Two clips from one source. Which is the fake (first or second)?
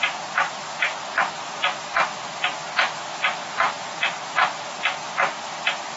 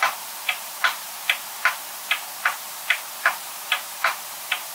second